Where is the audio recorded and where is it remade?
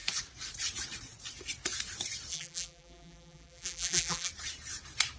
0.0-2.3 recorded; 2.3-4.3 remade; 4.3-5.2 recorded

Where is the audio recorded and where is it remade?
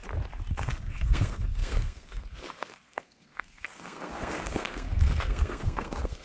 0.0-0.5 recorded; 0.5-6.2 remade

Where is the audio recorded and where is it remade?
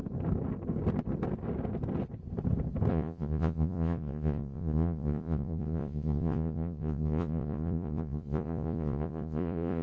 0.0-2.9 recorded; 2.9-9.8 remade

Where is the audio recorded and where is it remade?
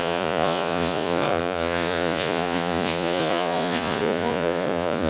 0.0-5.1 remade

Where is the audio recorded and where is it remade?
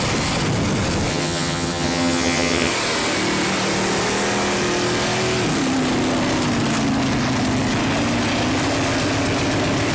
0.0-1.1 recorded; 1.1-2.7 remade; 2.7-9.9 recorded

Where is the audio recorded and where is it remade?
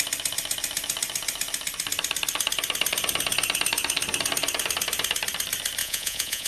0.0-5.8 recorded; 5.8-6.5 remade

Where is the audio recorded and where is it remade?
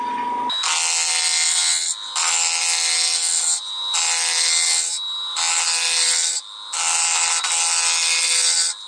0.0-8.9 recorded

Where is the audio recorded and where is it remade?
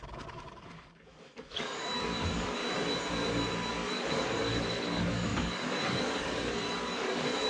0.0-2.6 remade; 2.6-3.7 recorded; 3.7-7.5 remade